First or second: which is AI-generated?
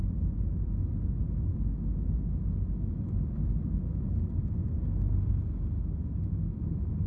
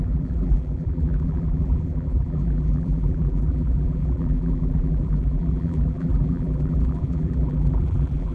second